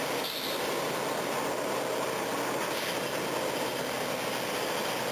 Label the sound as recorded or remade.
recorded